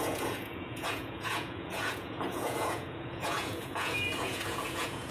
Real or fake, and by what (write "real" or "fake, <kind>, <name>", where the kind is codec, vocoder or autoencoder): fake, vocoder, Vocos